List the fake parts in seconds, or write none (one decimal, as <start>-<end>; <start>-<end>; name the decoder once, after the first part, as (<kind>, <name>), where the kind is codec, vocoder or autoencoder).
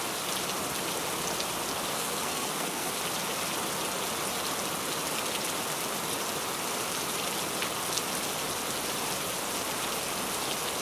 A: 1.9-2.9 (codec, SNAC)